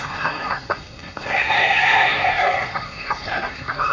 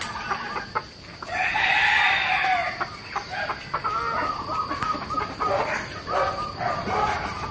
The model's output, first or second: first